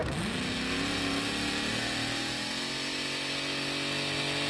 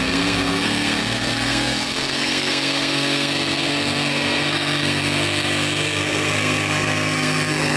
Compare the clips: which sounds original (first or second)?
first